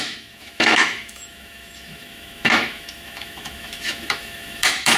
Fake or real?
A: fake